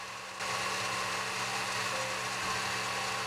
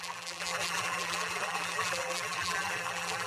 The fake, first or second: second